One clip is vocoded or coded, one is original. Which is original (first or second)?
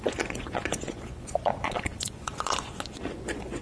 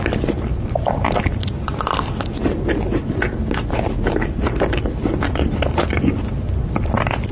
second